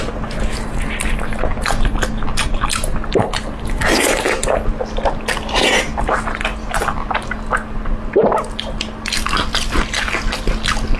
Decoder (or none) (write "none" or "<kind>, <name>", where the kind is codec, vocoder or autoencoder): none